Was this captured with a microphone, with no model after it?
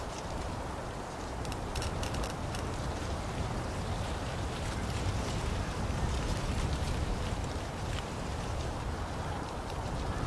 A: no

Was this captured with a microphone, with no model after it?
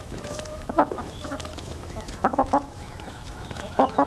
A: no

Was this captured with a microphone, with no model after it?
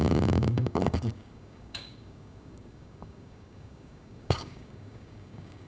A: no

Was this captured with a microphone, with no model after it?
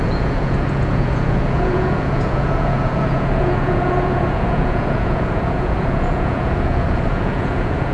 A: no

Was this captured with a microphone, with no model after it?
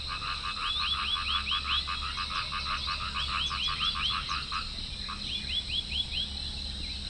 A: yes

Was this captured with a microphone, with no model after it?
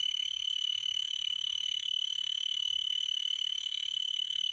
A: no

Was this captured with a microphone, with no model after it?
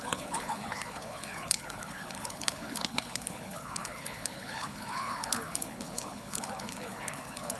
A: no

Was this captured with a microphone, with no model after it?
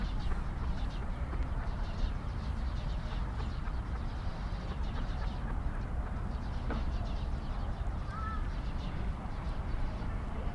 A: yes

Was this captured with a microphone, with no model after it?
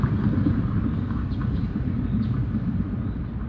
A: yes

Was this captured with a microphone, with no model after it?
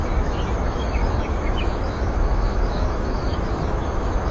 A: no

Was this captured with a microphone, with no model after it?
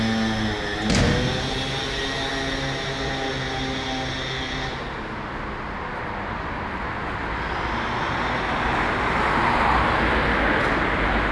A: yes